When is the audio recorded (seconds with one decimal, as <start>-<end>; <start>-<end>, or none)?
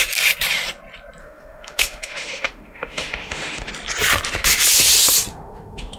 0.0-1.2; 3.7-5.3